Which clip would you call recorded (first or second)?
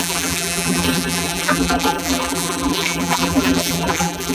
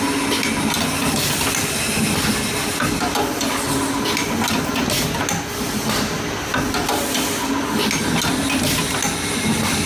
second